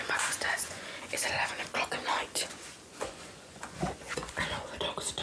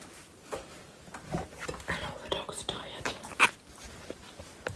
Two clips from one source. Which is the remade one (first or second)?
first